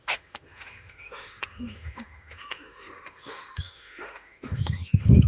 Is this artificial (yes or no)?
yes